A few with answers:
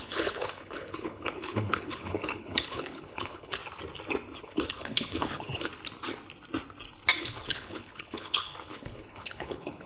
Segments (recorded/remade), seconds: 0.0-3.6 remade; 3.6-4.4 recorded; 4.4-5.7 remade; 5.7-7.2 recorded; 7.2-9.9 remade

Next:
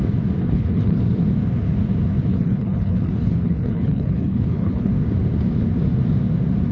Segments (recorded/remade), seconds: 0.0-0.4 recorded; 0.4-1.0 remade; 1.0-2.3 recorded; 2.3-4.9 remade; 4.9-6.7 recorded

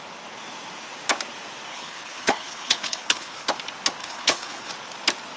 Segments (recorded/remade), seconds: 0.0-1.7 recorded; 1.7-3.5 remade; 3.5-4.0 recorded; 4.0-4.7 remade; 4.7-5.4 recorded

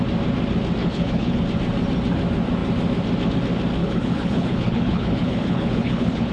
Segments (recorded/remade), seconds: 0.0-0.8 recorded; 0.8-1.4 remade; 1.4-3.8 recorded; 3.8-6.3 remade

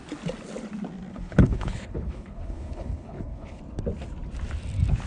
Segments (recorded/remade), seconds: 0.0-1.1 recorded; 1.1-3.6 remade; 3.6-5.1 recorded

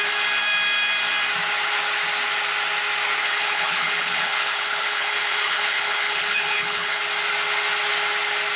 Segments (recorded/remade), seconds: 0.0-3.2 recorded; 3.2-7.0 remade; 7.0-8.6 recorded